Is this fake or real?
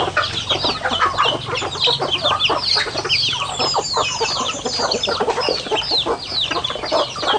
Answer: real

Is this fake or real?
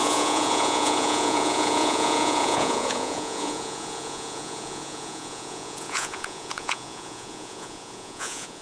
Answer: fake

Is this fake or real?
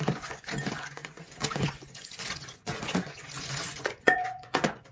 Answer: fake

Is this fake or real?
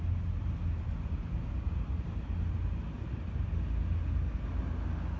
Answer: real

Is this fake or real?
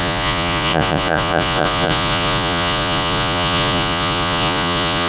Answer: fake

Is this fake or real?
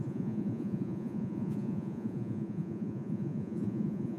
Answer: fake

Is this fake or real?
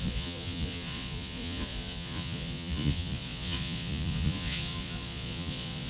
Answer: fake